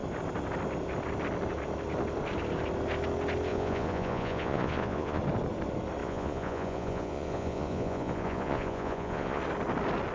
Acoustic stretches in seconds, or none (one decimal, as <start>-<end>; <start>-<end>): 0.0-3.5; 5.2-6.0; 9.4-10.1